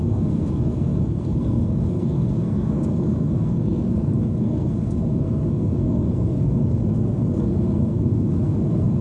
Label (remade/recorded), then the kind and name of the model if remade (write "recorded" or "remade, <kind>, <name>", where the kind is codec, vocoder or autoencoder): remade, codec, SNAC